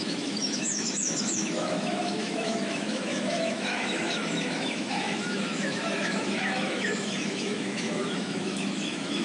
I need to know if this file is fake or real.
fake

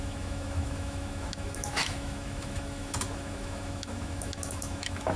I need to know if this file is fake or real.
fake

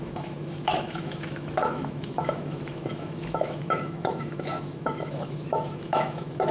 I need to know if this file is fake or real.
fake